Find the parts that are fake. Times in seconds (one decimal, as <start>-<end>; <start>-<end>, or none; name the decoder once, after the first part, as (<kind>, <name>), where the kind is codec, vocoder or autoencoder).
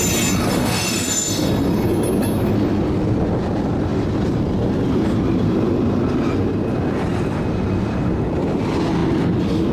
0.5-1.5 (autoencoder, DAC-VAE)